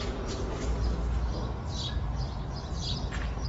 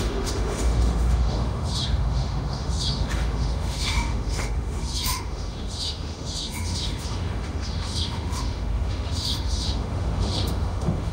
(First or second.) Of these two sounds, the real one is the first